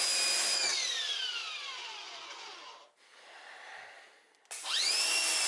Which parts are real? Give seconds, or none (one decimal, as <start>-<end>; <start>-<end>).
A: 0.0-5.5

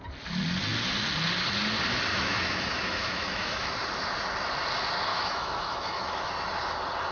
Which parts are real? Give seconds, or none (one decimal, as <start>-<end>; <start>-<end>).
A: 0.0-2.1; 3.7-5.1; 6.3-7.1

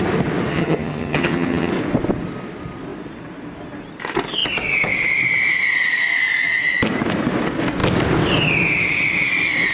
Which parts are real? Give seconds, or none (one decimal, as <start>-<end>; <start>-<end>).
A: 0.0-0.5; 1.7-9.7

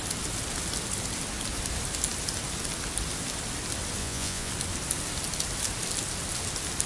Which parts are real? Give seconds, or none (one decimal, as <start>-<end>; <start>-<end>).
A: 0.0-4.0; 4.5-6.9

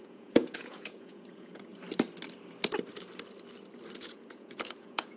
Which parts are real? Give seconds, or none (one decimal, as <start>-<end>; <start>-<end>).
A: 1.7-4.0

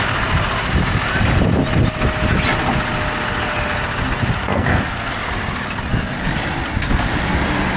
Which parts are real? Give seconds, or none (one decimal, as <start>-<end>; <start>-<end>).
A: 0.0-4.4; 5.1-7.8

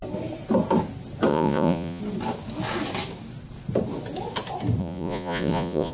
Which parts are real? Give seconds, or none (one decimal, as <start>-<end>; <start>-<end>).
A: 0.0-1.3; 2.0-4.8